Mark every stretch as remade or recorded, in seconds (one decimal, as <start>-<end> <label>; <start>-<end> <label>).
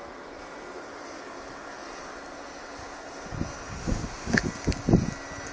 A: 0.0-3.8 recorded; 3.8-4.4 remade; 4.4-5.5 recorded